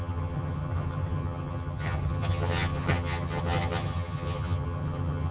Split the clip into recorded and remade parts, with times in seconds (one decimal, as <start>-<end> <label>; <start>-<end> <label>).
0.0-5.3 remade